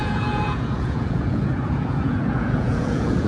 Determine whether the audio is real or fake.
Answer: fake